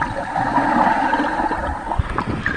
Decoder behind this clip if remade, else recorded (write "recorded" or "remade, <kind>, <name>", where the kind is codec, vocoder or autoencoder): recorded